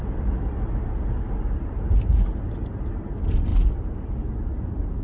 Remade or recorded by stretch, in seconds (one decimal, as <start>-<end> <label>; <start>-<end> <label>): 0.0-5.0 recorded